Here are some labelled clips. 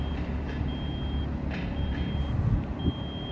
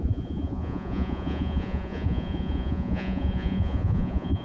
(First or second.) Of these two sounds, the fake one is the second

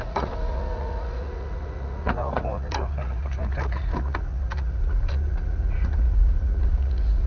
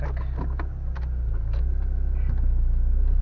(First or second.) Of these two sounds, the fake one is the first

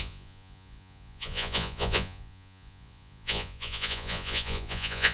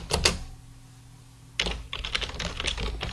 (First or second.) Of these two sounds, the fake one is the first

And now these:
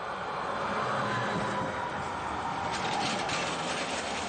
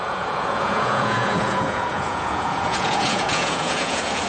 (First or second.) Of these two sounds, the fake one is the second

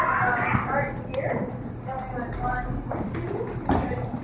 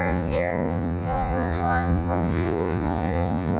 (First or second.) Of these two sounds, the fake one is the second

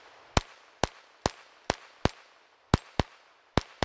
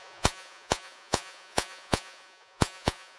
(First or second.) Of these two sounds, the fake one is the second